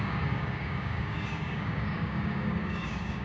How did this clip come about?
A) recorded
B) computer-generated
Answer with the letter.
B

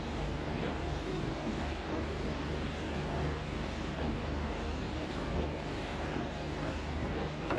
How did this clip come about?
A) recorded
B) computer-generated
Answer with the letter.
B